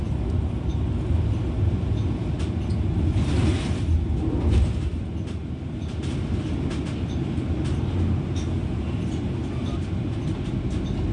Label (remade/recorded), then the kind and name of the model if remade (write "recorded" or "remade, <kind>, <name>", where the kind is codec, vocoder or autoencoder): recorded